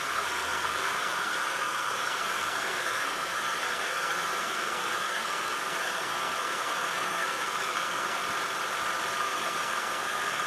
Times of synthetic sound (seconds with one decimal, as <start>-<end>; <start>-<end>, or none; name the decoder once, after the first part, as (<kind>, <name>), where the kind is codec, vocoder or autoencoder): 0.0-8.2 (codec, SNAC); 9.2-10.5